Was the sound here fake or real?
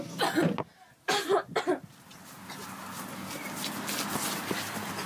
real